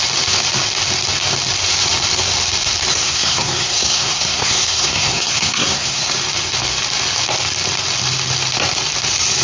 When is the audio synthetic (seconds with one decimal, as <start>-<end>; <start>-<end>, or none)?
2.9-6.1